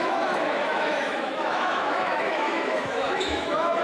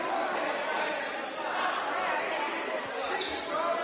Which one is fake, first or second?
first